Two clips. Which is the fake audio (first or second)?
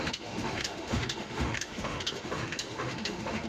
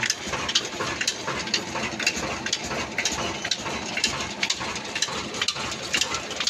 first